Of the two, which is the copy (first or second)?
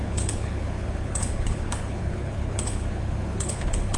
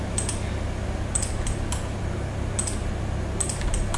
first